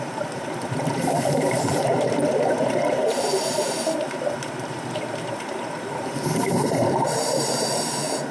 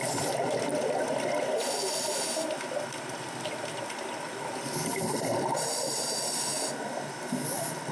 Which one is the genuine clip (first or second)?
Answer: second